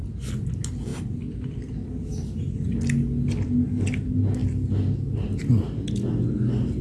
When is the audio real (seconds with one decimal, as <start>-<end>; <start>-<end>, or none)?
0.0-6.8